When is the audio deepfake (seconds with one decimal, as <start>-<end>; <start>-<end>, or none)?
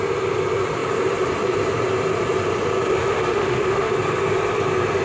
2.9-3.9